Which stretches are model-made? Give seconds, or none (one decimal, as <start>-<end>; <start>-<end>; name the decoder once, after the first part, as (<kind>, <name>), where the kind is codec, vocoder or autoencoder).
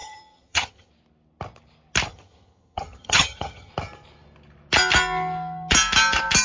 0.0-0.9 (vocoder, HiFi-GAN); 2.1-3.7